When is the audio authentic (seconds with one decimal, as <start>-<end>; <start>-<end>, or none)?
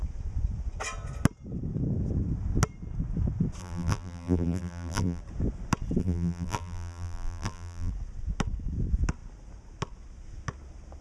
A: 0.0-3.6; 5.2-6.0; 7.9-11.0